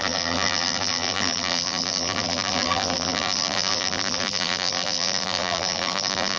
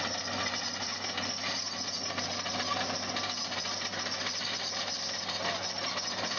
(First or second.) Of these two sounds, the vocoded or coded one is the first